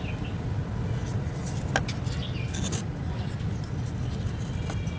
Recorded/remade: recorded